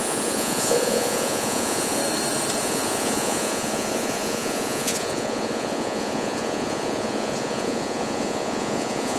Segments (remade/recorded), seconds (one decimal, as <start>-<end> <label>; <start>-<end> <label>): 0.0-2.0 remade; 2.0-2.6 recorded; 2.6-9.2 remade